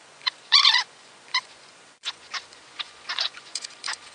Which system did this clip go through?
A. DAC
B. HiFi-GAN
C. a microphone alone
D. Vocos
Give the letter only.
D